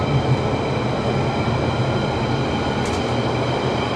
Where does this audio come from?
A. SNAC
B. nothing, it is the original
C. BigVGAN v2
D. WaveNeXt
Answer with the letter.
B